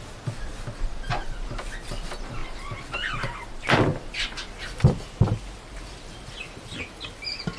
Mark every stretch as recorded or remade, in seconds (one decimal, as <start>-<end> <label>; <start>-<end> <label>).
0.0-2.4 recorded; 2.4-3.1 remade; 3.1-7.6 recorded